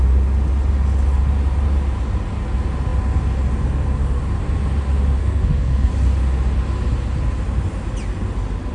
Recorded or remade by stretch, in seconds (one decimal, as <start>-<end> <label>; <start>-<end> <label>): 0.0-5.2 recorded; 5.2-5.9 remade; 5.9-8.7 recorded